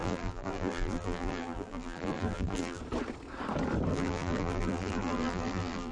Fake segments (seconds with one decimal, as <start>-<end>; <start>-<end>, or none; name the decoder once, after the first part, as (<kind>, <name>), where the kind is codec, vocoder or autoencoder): 0.0-2.8 (vocoder, BigVGAN v2); 3.9-5.9